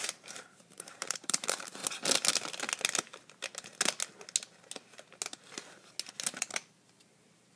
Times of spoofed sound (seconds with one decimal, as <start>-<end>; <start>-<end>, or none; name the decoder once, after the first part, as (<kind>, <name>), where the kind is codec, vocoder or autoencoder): 0.0-1.8 (vocoder, BigVGAN v2); 6.4-7.6